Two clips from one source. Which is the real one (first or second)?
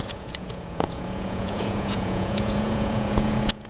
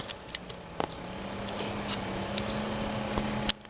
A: second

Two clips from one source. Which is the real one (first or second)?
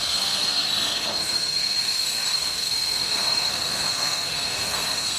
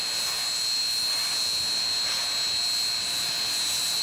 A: second